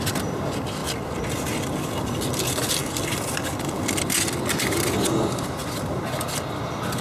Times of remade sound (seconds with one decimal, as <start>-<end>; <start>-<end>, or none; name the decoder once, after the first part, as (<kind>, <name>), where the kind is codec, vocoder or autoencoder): 0.0-0.8 (vocoder, BigVGAN v2); 2.3-2.8